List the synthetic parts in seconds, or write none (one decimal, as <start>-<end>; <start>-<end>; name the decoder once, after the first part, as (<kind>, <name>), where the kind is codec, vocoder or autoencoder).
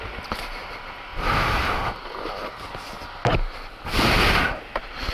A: none